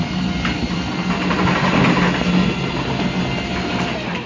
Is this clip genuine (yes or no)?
yes